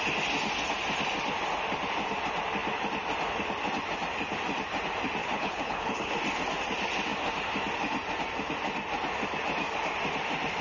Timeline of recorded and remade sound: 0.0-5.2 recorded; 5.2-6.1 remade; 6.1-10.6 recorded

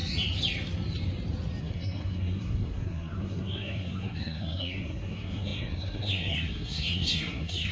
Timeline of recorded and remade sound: 0.0-1.6 recorded; 1.6-7.7 remade